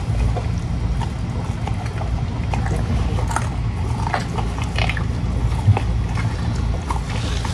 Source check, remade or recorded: recorded